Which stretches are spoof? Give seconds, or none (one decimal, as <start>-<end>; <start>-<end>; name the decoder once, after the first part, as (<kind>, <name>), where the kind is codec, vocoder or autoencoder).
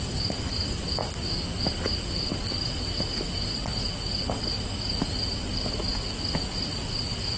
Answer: 1.0-1.6 (vocoder, BigVGAN v2)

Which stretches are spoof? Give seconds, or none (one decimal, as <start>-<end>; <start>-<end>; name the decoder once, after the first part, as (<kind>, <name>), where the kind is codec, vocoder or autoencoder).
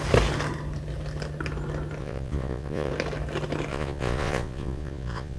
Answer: 2.0-2.9 (vocoder, Vocos); 3.7-5.4